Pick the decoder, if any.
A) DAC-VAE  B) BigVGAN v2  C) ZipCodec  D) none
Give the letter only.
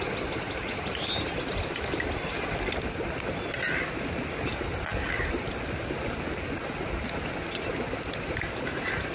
D